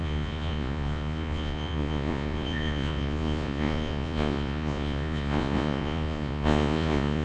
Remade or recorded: remade